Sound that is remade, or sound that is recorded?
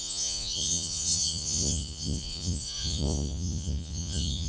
remade